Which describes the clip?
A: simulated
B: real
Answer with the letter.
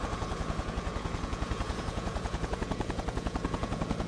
A